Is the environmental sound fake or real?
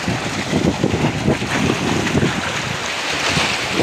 real